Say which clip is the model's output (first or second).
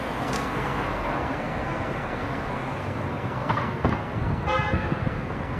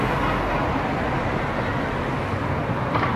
first